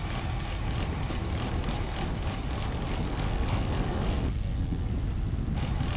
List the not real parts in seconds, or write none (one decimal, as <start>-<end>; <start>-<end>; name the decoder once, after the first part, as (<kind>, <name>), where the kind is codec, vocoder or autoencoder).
3.1-4.9 (codec, SNAC)